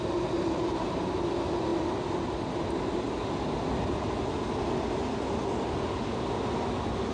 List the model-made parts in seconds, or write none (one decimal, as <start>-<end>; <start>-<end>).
none